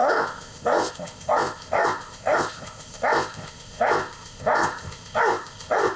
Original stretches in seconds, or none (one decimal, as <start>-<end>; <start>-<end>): none